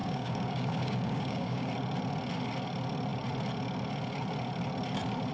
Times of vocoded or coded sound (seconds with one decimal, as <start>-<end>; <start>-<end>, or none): 0.0-1.7